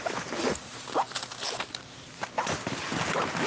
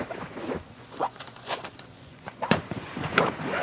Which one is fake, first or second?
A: second